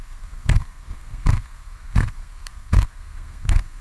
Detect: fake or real fake